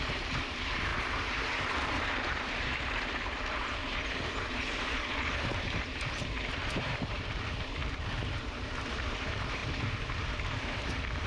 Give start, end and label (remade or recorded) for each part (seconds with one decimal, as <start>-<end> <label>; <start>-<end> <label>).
0.0-0.9 remade; 0.9-1.9 recorded; 1.9-3.8 remade; 3.8-4.5 recorded; 4.5-11.3 remade